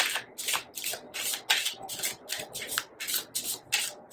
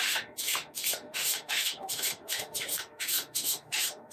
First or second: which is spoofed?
second